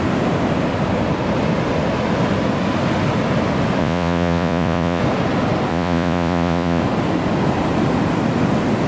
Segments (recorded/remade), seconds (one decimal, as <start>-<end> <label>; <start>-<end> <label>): 0.0-3.8 recorded; 3.8-5.0 remade; 5.0-5.7 recorded; 5.7-6.8 remade; 6.8-8.9 recorded